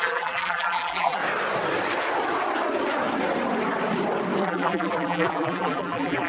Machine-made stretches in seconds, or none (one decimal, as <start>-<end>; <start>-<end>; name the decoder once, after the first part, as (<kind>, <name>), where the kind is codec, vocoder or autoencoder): 0.0-1.2 (vocoder, BigVGAN v2); 4.4-6.3